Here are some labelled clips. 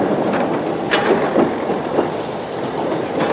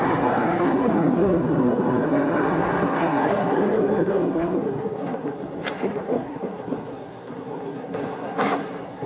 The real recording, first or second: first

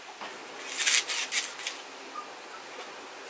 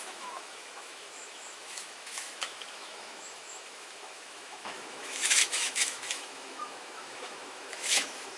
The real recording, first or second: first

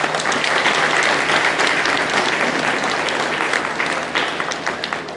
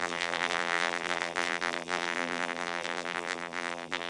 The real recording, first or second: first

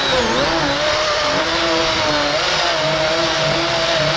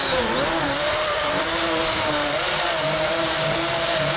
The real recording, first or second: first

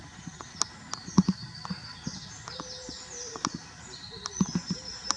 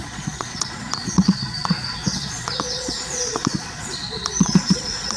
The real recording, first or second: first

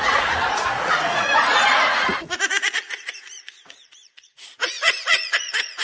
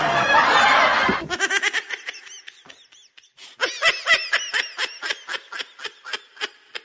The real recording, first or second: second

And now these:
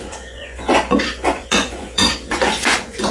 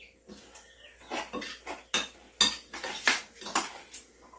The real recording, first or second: second